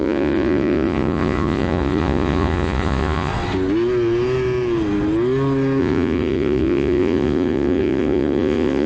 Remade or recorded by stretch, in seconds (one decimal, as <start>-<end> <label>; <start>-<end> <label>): 0.0-3.3 remade; 3.3-5.8 recorded; 5.8-8.9 remade

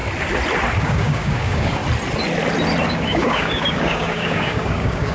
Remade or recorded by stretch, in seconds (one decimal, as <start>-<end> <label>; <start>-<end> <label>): 0.0-0.8 recorded; 0.8-1.8 remade; 1.8-2.9 recorded; 2.9-5.1 remade

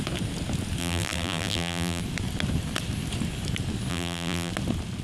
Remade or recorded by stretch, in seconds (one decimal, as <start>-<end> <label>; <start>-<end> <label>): 0.0-0.8 recorded; 0.8-2.0 remade; 2.0-3.9 recorded; 3.9-4.5 remade; 4.5-5.0 recorded

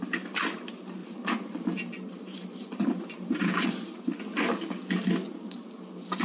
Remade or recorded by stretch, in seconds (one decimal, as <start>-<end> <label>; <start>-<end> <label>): 0.0-1.0 recorded; 1.0-3.7 remade; 3.7-6.2 recorded

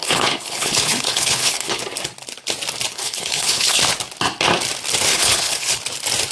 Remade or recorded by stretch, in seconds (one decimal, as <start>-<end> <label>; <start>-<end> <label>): 0.0-1.8 remade; 1.8-2.9 recorded; 2.9-3.8 remade; 3.8-5.1 recorded; 5.1-5.8 remade; 5.8-6.3 recorded

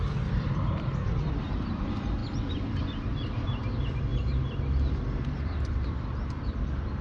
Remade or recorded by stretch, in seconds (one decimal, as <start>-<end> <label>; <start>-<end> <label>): 0.0-2.2 remade; 2.2-2.8 recorded; 2.8-4.1 remade; 4.1-4.9 recorded; 4.9-7.0 remade

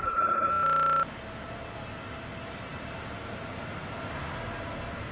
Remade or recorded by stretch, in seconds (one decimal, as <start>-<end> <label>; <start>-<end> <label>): 0.0-0.5 remade; 0.5-5.1 recorded

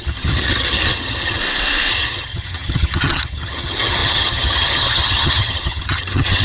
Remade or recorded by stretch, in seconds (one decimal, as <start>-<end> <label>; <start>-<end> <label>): 0.0-1.4 remade; 1.4-1.9 recorded; 1.9-6.4 remade